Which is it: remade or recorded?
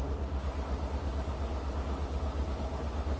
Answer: recorded